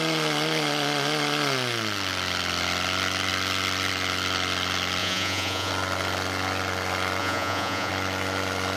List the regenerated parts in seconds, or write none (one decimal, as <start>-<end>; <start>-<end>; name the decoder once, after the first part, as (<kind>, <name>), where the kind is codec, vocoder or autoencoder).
5.0-5.7 (vocoder, Vocos); 7.2-7.9